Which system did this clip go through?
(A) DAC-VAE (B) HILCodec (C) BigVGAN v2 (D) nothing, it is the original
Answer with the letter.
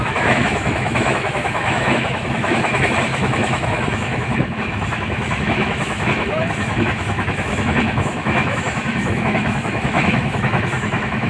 A